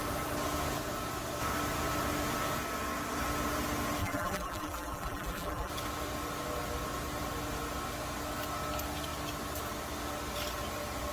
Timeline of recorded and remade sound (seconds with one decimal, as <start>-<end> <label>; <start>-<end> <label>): 0.0-4.0 recorded; 4.0-5.7 remade; 5.7-11.1 recorded